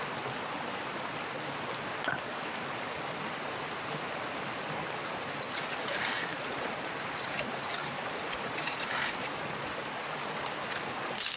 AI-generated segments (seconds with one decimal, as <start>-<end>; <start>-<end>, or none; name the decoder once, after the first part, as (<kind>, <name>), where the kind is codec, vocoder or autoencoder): 6.3-9.1 (vocoder, BigVGAN v2)